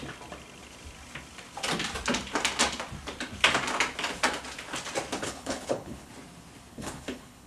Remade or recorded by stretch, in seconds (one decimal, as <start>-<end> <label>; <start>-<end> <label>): 0.0-5.2 recorded; 5.2-6.1 remade; 6.1-6.7 recorded; 6.7-7.5 remade